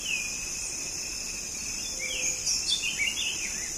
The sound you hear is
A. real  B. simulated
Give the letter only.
A